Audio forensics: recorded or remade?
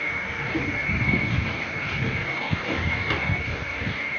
remade